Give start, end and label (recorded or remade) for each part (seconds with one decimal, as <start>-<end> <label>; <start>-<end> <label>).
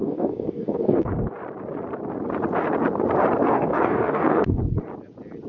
0.0-1.1 remade; 1.1-3.5 recorded; 3.5-4.6 remade; 4.6-5.5 recorded